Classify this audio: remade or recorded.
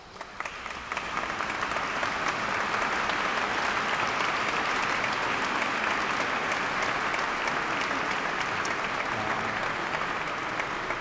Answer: recorded